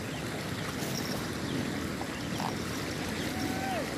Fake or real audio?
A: real